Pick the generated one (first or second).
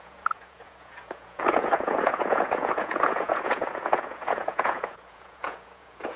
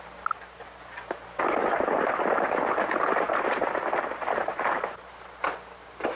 first